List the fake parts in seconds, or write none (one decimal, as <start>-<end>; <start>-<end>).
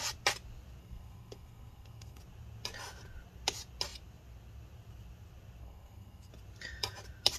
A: 0.8-2.2; 5.6-6.3